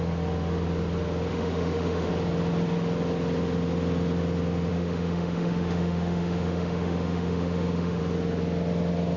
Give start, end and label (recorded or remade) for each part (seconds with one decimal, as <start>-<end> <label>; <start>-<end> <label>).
0.0-1.3 recorded; 1.3-2.1 remade; 2.1-4.7 recorded; 4.7-8.0 remade; 8.0-9.2 recorded

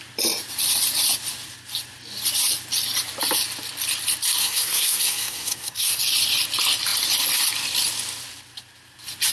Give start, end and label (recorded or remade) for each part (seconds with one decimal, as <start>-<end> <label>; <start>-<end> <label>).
0.0-4.4 recorded; 4.4-6.0 remade; 6.0-9.3 recorded

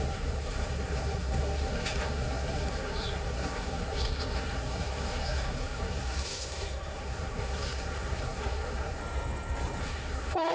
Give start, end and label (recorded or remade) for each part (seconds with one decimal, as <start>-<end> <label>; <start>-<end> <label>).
0.0-9.0 remade; 9.0-9.8 recorded; 9.8-10.5 remade